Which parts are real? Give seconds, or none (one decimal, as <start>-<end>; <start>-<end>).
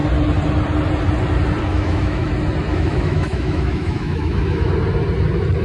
0.0-1.7; 2.3-2.7; 4.7-5.6